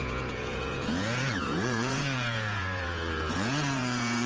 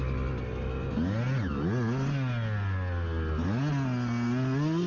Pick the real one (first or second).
second